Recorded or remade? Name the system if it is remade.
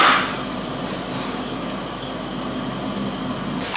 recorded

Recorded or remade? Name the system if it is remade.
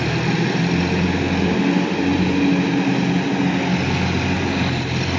recorded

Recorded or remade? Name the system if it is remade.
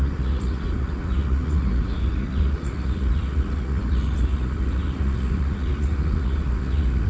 remade, vocoder, Vocos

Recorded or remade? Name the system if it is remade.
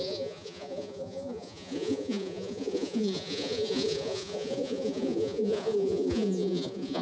remade, vocoder, Vocos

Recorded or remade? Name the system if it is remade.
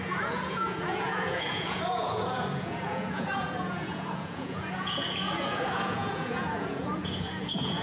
remade, vocoder, Vocos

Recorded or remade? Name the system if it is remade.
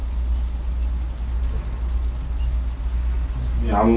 recorded